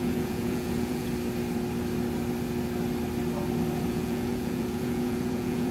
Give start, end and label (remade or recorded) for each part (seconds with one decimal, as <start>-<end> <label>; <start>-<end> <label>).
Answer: 0.0-1.1 remade; 1.1-3.9 recorded; 3.9-5.7 remade